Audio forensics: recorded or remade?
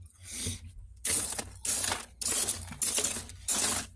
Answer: recorded